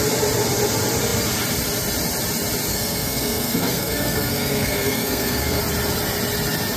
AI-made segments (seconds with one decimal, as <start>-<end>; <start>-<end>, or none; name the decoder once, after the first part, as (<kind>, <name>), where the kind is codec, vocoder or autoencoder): 2.7-5.6 (codec, SNAC)